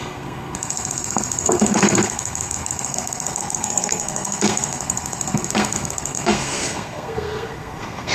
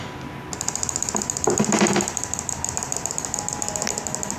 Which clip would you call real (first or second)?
second